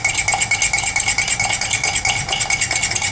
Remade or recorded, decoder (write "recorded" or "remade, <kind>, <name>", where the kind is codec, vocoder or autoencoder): recorded